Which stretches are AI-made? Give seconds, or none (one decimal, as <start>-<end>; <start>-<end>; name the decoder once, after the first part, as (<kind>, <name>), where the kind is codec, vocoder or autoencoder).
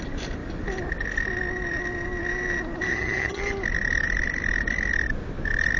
2.9-3.4 (vocoder, HiFi-GAN)